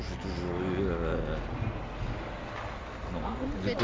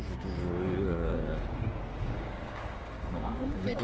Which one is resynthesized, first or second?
second